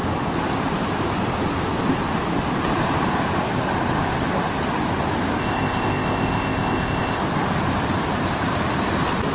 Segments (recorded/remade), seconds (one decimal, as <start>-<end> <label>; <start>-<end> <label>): 0.0-5.4 recorded; 5.4-7.2 remade; 7.2-9.3 recorded